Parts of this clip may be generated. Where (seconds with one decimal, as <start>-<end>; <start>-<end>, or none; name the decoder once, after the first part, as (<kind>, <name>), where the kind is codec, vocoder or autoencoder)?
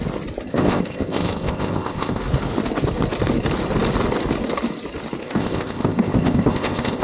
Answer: 0.5-2.2 (codec, ZipCodec); 5.2-7.0